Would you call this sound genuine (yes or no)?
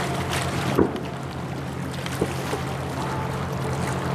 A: yes